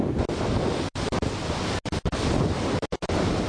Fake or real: real